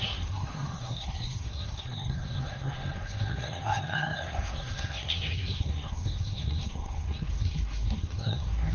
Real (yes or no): no